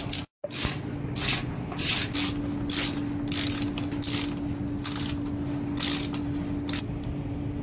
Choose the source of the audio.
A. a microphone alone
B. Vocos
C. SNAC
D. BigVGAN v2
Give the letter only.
A